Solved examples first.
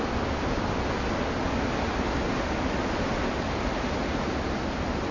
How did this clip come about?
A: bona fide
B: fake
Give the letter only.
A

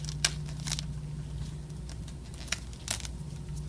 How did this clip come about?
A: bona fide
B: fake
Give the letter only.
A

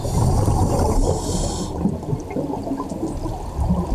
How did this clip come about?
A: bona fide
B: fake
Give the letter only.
A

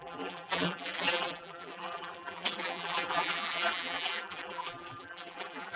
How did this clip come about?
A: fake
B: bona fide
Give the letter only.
A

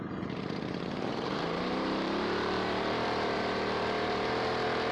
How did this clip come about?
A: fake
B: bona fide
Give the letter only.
A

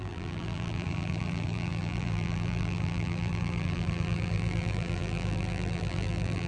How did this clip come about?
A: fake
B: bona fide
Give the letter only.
A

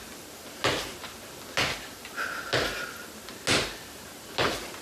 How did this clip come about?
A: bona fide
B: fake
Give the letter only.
A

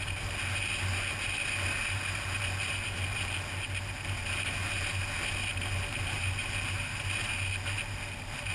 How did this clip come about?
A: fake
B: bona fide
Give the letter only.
B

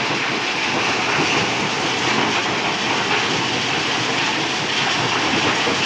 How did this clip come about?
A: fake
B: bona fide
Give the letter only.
B